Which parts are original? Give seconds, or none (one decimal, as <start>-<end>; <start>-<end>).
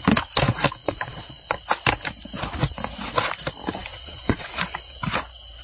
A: 0.0-0.8; 1.6-3.9; 5.0-5.6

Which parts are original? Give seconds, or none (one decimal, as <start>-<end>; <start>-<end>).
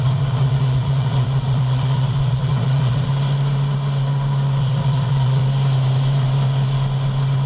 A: 3.1-4.6; 5.4-7.5